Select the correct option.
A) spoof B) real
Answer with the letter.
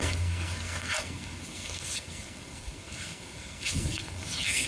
A